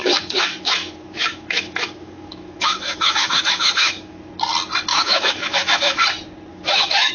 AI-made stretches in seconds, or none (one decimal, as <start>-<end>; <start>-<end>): 0.0-4.3; 4.9-6.0; 6.5-7.1

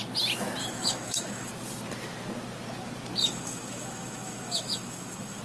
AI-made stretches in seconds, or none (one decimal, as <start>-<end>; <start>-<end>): 0.6-1.5; 3.2-5.4

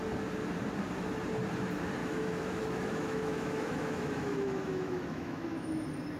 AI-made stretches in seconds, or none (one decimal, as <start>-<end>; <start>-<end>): 2.0-5.7